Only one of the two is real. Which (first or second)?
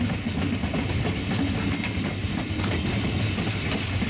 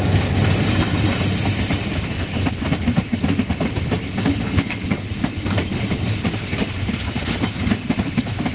first